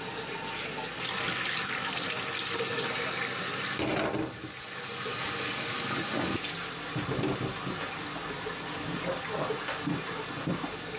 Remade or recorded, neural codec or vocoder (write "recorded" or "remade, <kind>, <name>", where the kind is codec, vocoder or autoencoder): recorded